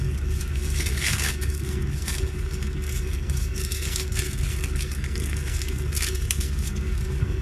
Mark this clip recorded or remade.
remade